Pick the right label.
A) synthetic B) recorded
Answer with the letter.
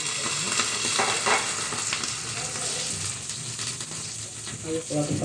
B